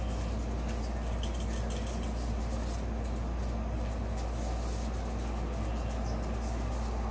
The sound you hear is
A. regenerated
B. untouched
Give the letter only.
B